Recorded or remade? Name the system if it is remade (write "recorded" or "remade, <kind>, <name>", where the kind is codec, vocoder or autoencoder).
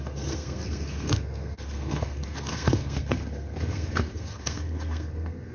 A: remade, codec, SNAC